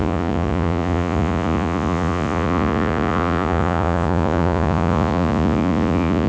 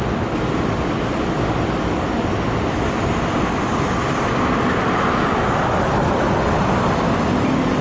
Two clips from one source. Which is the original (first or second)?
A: second